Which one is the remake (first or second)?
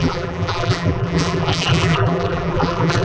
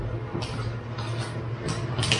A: first